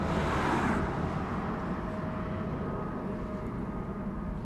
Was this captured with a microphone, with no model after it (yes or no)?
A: yes